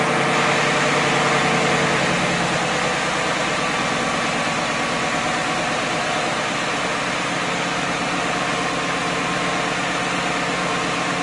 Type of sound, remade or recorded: recorded